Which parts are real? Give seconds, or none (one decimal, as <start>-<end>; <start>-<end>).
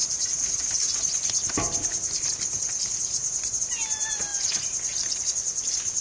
0.0-6.0